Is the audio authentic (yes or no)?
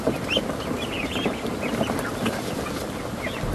yes